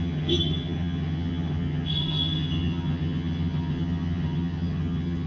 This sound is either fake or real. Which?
fake